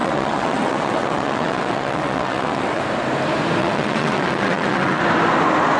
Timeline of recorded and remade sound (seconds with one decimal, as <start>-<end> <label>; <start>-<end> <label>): 0.0-2.8 remade; 2.8-3.6 recorded; 3.6-5.0 remade; 5.0-5.8 recorded